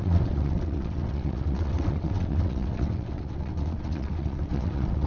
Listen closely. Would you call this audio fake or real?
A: fake